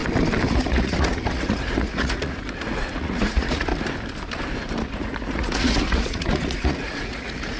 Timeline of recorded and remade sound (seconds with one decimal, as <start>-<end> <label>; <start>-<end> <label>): 0.0-0.5 recorded; 0.5-3.7 remade; 3.7-4.9 recorded; 4.9-7.6 remade